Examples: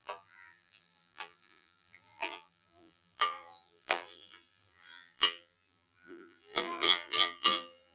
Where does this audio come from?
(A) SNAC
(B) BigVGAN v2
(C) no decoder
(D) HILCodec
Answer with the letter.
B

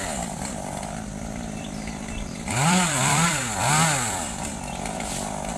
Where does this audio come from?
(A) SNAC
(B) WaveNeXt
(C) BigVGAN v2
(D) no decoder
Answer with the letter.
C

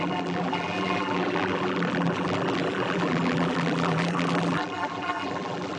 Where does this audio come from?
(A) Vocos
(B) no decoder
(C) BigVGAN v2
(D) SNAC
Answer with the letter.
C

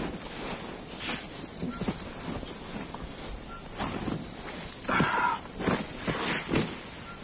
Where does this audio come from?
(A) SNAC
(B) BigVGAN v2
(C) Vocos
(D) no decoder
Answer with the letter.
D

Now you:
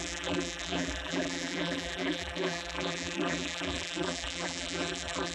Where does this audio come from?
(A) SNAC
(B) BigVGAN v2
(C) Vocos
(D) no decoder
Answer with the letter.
B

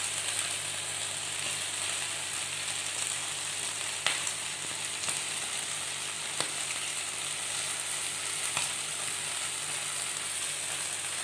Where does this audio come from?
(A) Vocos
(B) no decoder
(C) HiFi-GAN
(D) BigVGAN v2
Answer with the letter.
B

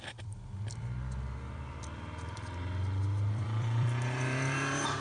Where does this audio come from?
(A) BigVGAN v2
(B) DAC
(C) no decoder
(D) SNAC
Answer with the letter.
A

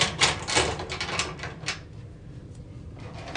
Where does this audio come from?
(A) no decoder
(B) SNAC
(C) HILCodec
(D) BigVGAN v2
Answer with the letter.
A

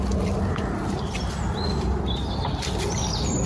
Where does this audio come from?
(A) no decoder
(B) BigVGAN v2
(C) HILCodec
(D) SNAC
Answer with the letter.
A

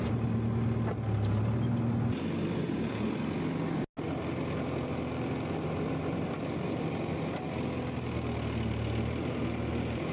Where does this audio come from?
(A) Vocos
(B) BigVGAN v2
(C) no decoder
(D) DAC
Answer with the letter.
C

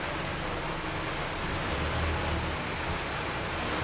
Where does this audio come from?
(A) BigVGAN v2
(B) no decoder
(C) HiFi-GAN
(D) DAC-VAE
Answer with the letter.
B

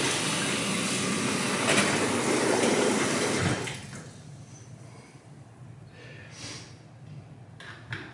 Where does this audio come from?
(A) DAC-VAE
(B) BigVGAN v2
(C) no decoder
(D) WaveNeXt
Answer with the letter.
C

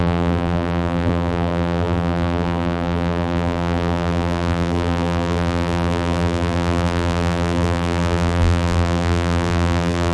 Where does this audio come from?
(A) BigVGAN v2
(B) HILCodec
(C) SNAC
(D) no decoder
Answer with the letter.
A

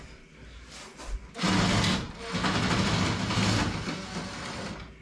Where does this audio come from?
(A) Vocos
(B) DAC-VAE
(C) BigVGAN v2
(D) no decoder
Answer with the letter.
D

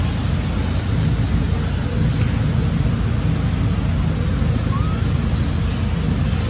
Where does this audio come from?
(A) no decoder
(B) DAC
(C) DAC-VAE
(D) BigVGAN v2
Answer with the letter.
A